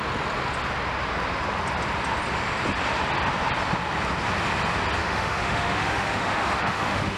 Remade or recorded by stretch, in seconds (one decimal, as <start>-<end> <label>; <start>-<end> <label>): 0.0-5.0 recorded; 5.0-7.2 remade